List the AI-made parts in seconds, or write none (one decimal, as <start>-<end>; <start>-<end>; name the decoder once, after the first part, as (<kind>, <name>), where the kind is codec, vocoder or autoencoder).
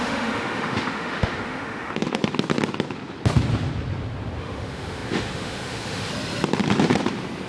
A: 0.0-2.2 (autoencoder, DAC-VAE); 4.4-6.1